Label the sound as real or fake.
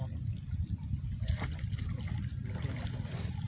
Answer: real